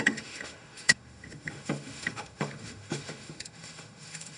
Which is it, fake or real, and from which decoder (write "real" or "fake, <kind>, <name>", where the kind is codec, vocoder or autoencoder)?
fake, autoencoder, DAC-VAE